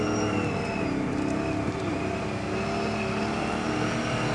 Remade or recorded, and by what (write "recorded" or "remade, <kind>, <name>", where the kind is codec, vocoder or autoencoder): recorded